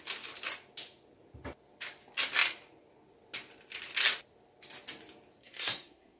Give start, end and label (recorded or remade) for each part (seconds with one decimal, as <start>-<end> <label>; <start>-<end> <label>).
0.0-5.4 recorded; 5.4-6.2 remade